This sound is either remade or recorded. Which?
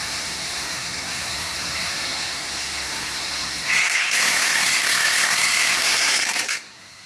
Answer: remade